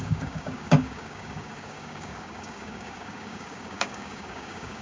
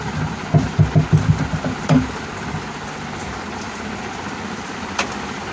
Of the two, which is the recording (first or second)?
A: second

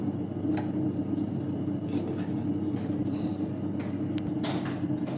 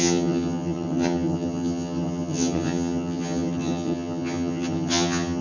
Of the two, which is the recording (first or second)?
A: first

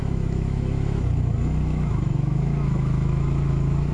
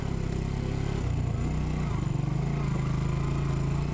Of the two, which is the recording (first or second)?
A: second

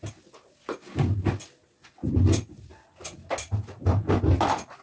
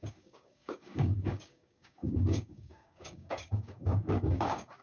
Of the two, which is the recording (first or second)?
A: first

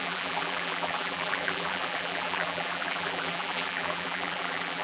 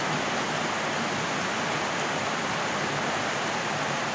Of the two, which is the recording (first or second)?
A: second